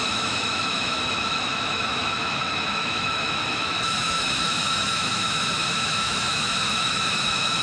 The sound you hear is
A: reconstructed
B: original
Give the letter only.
A